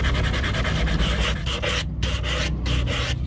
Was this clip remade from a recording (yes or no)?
no